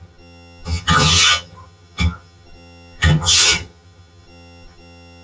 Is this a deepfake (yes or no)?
yes